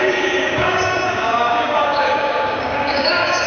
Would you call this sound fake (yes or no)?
yes